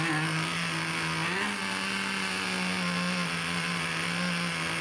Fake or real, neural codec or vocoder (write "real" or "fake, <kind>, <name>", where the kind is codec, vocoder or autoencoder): real